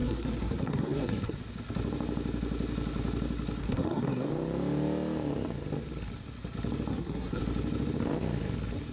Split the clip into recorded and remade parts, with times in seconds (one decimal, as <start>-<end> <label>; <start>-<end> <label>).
0.0-1.3 remade; 1.3-3.6 recorded; 3.6-4.3 remade; 4.3-6.9 recorded; 6.9-7.4 remade; 7.4-8.9 recorded